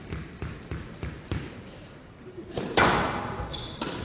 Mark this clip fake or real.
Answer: fake